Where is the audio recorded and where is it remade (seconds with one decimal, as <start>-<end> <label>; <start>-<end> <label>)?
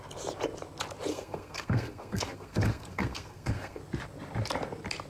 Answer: 0.0-1.1 recorded; 1.1-3.8 remade; 3.8-5.1 recorded